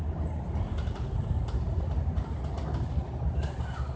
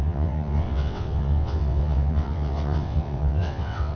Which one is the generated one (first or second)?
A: second